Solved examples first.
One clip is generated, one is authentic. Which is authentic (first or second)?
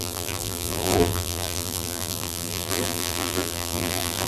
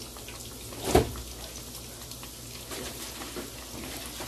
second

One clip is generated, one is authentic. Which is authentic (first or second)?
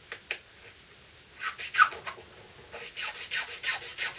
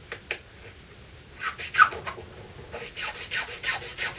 first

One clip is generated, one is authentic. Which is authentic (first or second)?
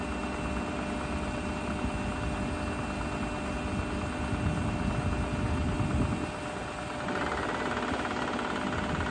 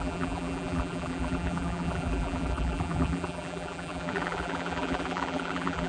first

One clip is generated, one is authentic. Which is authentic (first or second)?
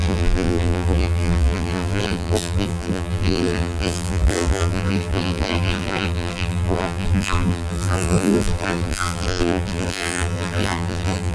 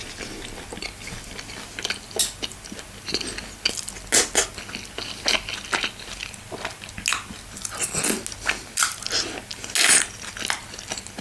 second